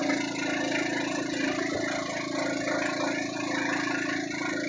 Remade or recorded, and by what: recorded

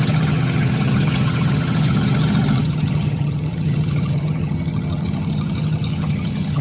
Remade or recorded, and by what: remade, vocoder, HiFi-GAN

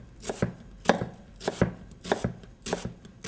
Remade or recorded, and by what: recorded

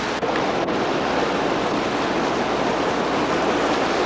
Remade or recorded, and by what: recorded